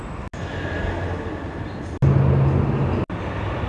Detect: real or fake real